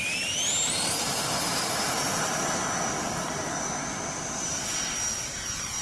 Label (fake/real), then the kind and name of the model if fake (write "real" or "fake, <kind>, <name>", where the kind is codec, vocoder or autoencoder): real